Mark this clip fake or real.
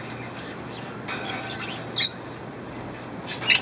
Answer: real